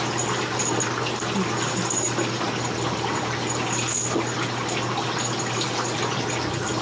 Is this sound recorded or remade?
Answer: recorded